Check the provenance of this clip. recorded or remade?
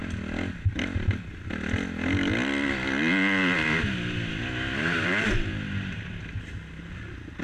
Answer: recorded